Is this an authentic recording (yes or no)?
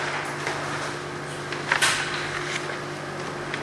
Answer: yes